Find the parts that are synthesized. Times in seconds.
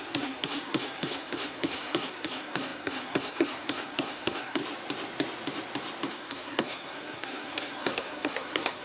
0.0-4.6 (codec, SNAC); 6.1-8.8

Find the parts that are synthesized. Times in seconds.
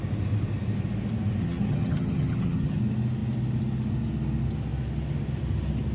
1.4-2.8 (vocoder, HiFi-GAN)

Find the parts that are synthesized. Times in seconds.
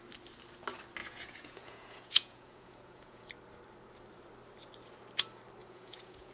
1.0-3.3 (vocoder, Vocos); 5.6-6.3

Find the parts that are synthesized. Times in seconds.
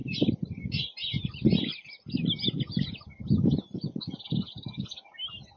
none